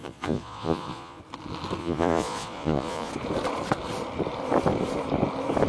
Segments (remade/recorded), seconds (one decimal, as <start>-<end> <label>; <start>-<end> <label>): 0.0-1.2 remade; 1.2-1.8 recorded; 1.8-3.1 remade; 3.1-5.7 recorded